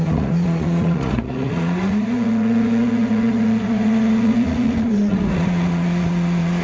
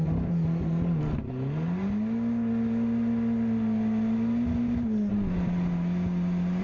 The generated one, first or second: first